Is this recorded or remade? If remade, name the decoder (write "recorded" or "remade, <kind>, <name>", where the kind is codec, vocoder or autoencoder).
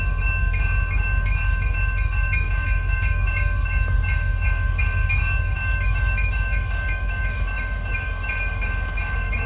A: remade, codec, DAC